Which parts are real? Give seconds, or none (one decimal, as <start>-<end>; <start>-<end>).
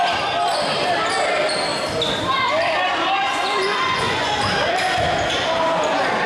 0.0-3.3; 4.3-6.3